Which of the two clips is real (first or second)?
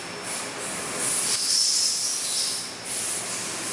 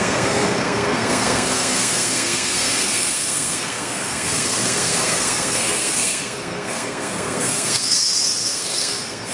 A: first